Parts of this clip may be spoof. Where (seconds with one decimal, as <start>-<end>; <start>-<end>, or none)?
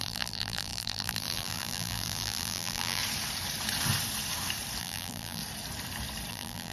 0.0-3.0; 4.8-5.4; 6.3-6.7